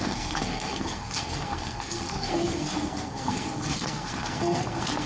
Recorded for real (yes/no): no